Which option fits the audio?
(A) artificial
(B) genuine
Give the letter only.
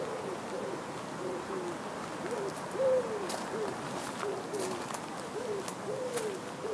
B